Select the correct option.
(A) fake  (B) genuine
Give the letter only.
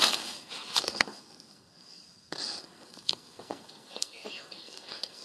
A